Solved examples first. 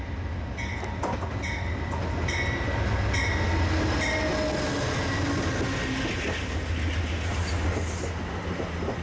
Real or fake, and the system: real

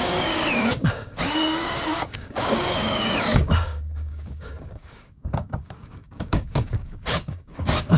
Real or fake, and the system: fake, codec, DAC